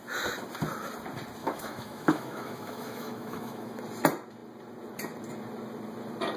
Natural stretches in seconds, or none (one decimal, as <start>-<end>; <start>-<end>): 0.0-1.4; 3.8-6.4